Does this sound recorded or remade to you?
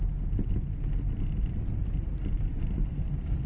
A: remade